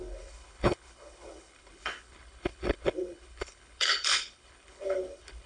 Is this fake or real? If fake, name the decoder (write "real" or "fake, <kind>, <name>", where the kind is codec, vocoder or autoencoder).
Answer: fake, codec, HILCodec